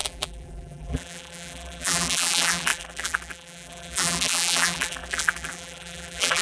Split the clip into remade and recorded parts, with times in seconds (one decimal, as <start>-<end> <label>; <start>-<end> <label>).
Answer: 0.0-6.4 remade